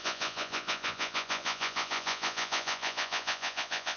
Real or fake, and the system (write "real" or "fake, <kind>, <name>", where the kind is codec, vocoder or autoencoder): fake, vocoder, Vocos